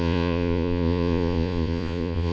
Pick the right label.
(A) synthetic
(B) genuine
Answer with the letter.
A